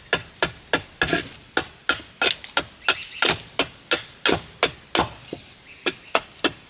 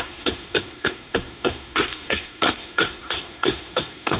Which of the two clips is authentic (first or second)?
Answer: first